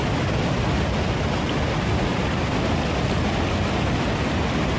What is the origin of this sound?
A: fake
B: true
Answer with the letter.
B